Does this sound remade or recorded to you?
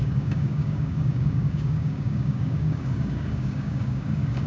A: remade